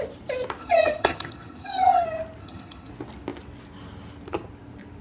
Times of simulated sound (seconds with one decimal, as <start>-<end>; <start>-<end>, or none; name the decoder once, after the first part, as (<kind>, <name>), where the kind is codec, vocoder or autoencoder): 0.6-2.0 (vocoder, HiFi-GAN); 2.4-2.9